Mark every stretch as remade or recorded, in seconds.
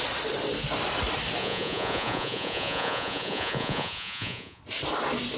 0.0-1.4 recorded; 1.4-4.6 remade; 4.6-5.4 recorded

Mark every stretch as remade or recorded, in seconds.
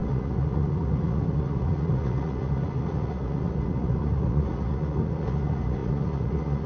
0.0-6.7 remade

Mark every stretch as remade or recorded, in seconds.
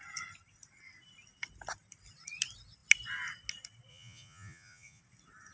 0.0-3.9 recorded; 3.9-5.0 remade; 5.0-5.5 recorded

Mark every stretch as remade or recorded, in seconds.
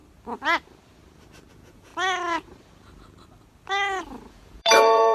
0.0-1.5 recorded; 1.5-1.9 remade; 1.9-4.3 recorded; 4.3-5.1 remade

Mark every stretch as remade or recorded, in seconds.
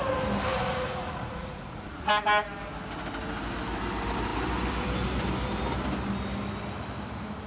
0.0-0.5 recorded; 0.5-2.1 remade; 2.1-7.5 recorded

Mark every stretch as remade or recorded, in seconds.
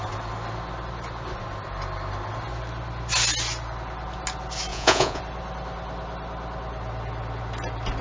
0.0-4.7 recorded; 4.7-5.2 remade; 5.2-8.0 recorded